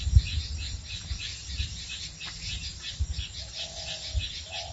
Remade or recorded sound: recorded